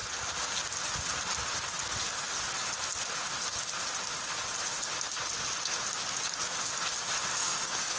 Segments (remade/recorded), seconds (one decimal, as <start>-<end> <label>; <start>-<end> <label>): 0.0-7.4 recorded; 7.4-8.0 remade